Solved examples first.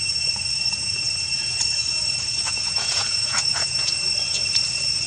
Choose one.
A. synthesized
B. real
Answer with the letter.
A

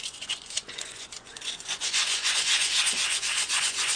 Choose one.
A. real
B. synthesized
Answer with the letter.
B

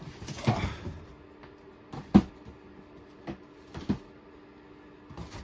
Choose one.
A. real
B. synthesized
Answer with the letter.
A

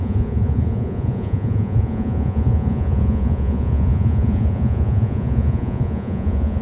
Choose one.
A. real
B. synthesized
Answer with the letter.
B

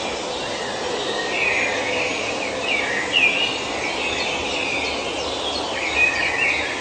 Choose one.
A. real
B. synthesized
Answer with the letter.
A